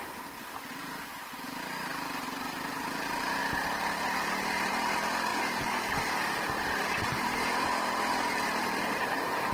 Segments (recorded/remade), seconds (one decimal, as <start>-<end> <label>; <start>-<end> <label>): 0.0-9.5 recorded